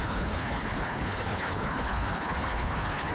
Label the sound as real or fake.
fake